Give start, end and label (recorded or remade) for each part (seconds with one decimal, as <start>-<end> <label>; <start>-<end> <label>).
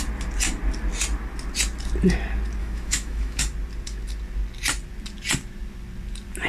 0.0-2.6 recorded; 2.6-3.4 remade; 3.4-6.5 recorded